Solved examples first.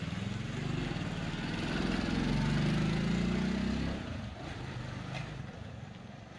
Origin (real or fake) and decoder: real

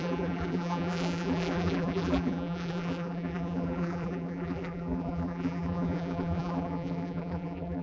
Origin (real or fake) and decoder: fake, vocoder, BigVGAN v2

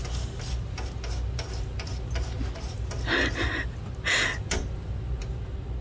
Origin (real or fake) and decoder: real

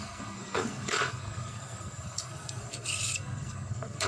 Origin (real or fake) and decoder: fake, codec, SNAC